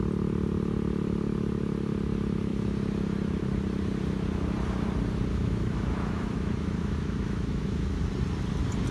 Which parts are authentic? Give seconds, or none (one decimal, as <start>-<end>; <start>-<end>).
0.0-5.3; 8.1-8.9